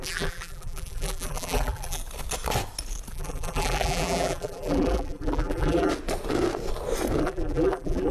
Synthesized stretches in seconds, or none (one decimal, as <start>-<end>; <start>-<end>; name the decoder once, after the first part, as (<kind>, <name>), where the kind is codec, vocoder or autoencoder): 0.0-2.0 (vocoder, BigVGAN v2); 3.1-5.9; 7.2-8.1